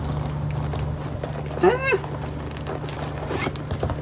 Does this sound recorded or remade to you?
recorded